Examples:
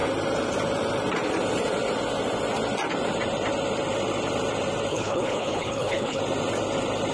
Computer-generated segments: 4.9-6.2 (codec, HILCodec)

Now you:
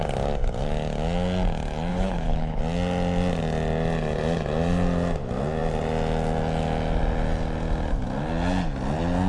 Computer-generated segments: 1.9-2.6 (codec, HILCodec)

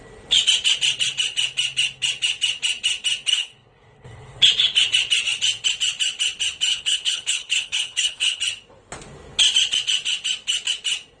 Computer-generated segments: 3.3-4.4 (codec, HILCodec); 6.7-8.4